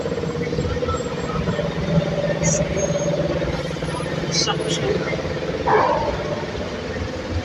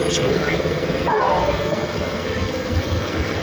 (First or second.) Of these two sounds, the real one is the first